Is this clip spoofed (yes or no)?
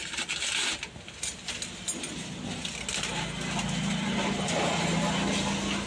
no